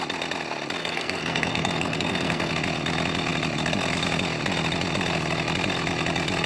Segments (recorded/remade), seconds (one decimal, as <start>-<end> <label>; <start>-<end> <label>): 0.0-0.8 recorded; 0.8-2.5 remade; 2.5-6.5 recorded